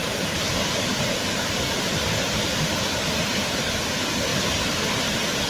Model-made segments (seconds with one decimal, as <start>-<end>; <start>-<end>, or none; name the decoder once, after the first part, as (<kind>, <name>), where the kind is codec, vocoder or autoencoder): 0.0-1.9 (vocoder, BigVGAN v2); 2.9-3.6; 4.3-5.1